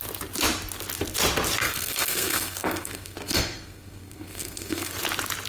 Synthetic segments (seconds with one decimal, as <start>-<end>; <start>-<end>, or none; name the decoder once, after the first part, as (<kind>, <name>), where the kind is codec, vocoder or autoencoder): 1.6-4.9 (codec, SNAC)